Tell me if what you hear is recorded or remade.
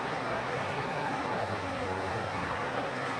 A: remade